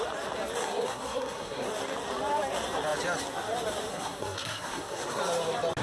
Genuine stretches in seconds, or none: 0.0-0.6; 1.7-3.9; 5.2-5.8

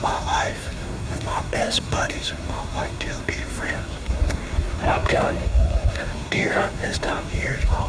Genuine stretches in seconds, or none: none

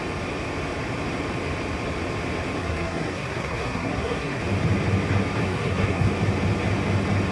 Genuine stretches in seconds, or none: 0.0-2.6; 4.4-5.4; 6.1-7.3